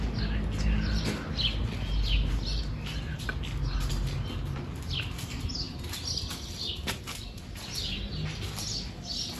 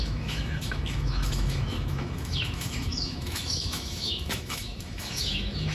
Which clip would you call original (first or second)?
first